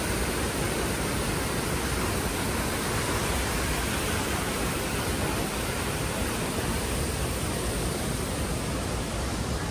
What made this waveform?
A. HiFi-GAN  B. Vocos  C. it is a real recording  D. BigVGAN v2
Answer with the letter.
D